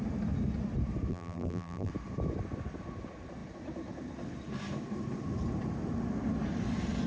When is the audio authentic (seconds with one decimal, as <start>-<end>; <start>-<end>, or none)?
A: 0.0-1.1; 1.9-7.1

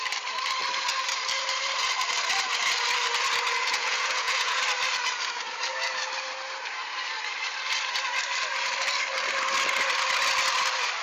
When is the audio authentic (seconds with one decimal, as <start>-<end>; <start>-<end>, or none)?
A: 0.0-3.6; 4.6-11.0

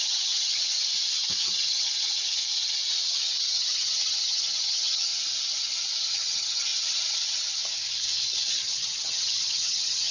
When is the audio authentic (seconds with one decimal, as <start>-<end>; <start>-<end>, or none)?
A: 0.8-1.4; 2.4-3.5; 5.1-6.0; 6.7-8.5

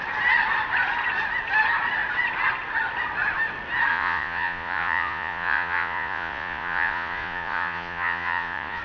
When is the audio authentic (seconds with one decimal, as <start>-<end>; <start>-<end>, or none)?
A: 0.0-3.9